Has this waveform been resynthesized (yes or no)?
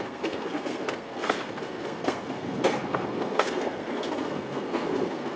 yes